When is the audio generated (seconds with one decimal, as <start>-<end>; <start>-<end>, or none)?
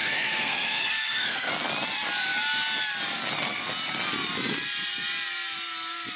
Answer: 0.0-1.5